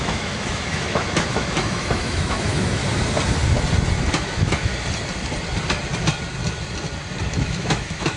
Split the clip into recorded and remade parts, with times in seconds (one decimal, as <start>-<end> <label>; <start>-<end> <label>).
0.0-2.8 remade; 2.8-4.1 recorded; 4.1-4.7 remade; 4.7-7.3 recorded; 7.3-8.2 remade